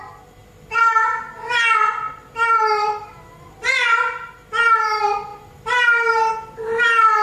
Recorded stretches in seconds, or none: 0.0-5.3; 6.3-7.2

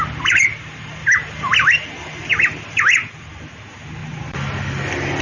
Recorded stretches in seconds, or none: 0.0-5.2

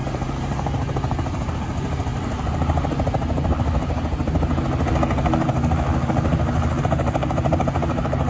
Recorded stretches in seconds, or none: 1.5-8.3

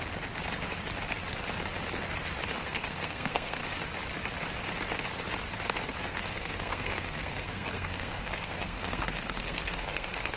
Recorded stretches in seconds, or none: 0.0-2.6; 3.6-6.1